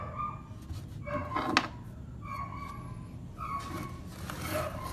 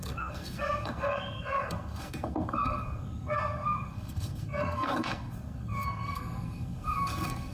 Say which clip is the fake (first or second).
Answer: second